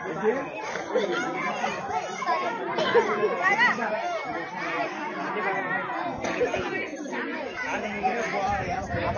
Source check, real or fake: real